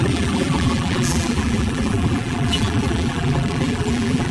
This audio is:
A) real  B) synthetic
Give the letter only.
B